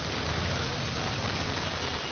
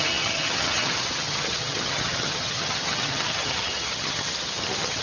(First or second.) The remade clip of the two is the second